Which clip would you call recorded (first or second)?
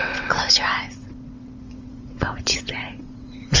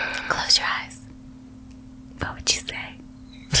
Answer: second